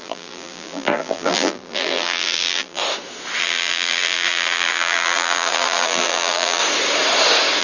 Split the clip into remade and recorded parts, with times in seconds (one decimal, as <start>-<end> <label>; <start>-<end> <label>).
0.0-2.8 remade; 2.8-3.4 recorded; 3.4-6.6 remade; 6.6-7.6 recorded